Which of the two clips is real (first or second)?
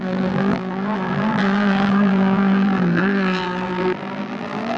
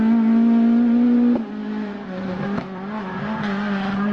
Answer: second